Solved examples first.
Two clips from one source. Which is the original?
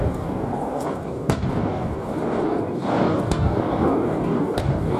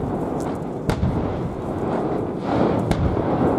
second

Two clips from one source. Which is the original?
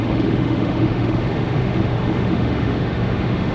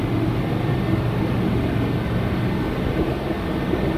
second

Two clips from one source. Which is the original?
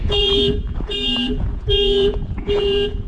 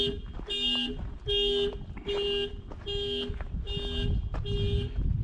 second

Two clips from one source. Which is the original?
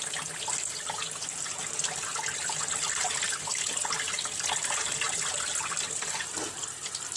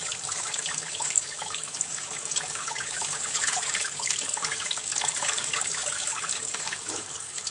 first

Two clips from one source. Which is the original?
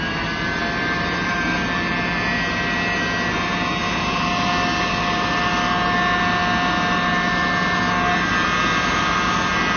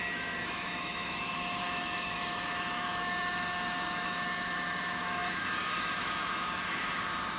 first